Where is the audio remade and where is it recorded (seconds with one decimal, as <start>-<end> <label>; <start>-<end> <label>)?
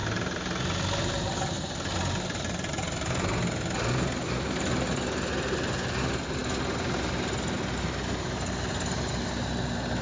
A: 0.0-10.0 recorded